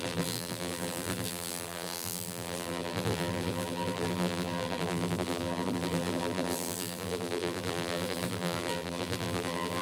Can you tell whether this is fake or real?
fake